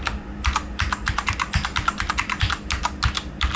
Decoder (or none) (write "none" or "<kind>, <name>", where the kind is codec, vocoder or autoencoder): none